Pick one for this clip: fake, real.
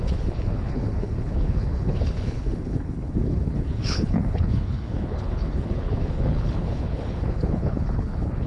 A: fake